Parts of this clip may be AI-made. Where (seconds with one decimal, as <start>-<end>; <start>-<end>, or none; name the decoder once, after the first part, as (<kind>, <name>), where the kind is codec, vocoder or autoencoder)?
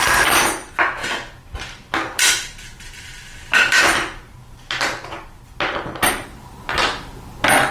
1.0-3.8 (vocoder, BigVGAN v2)